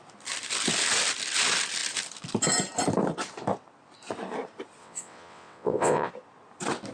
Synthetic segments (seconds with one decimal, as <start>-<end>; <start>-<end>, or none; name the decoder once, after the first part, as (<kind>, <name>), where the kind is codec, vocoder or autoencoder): 4.8-6.1 (vocoder, WaveNeXt)